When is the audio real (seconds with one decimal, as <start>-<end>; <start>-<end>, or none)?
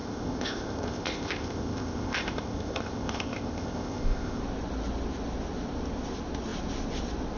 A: 4.4-7.4